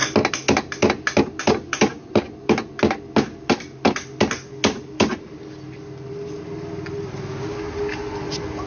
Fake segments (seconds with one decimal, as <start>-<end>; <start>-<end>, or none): none